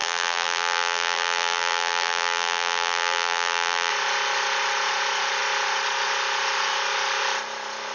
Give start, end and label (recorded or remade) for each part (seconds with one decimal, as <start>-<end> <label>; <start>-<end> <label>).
0.0-3.9 remade; 3.9-7.9 recorded